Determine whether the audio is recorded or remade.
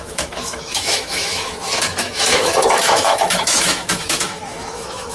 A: remade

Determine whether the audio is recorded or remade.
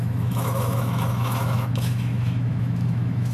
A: remade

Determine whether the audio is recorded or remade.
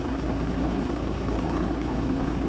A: remade